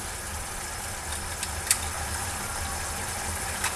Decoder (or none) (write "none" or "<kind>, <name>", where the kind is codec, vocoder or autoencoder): none